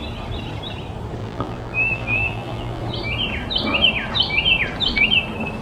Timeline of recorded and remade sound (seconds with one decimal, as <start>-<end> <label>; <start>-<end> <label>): 0.0-1.2 recorded; 1.2-2.8 remade; 2.8-5.6 recorded